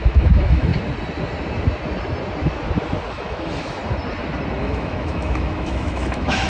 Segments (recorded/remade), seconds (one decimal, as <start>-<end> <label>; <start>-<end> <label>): 0.0-0.7 remade; 0.7-3.1 recorded; 3.1-3.8 remade; 3.8-4.6 recorded; 4.6-6.5 remade